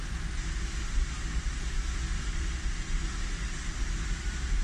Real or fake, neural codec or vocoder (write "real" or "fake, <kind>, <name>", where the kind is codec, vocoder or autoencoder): real